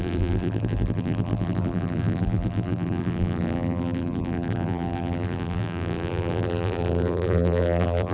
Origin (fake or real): fake